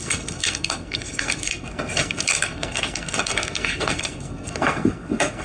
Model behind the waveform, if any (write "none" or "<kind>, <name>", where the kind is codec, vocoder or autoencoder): codec, SNAC